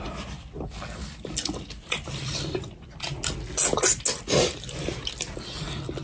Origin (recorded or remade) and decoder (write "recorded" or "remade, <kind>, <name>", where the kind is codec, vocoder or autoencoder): recorded